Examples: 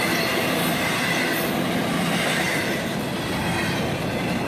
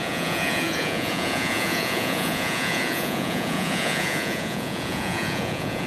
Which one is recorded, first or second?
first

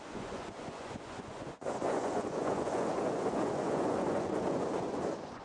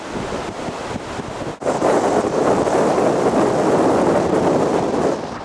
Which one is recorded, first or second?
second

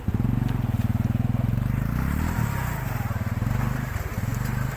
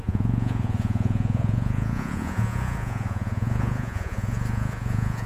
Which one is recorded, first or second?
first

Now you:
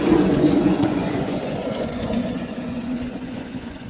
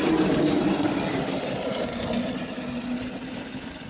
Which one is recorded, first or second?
second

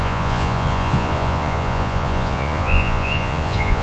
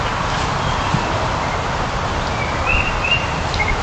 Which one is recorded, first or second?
second